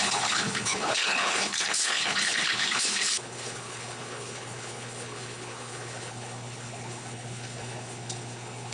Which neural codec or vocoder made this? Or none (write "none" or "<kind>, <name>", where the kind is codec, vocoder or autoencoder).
codec, HILCodec